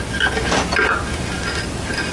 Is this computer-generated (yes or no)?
no